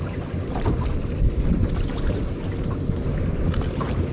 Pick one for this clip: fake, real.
fake